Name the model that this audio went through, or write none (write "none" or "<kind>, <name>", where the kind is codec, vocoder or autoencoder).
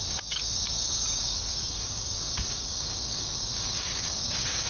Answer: codec, DAC